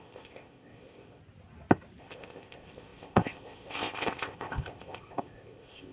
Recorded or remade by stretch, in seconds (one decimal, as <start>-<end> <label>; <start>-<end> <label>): 0.0-1.2 remade; 1.2-2.0 recorded; 2.0-5.9 remade